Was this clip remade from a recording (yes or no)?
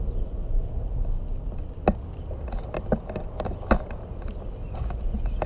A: no